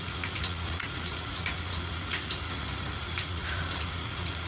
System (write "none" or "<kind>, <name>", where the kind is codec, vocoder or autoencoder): vocoder, Vocos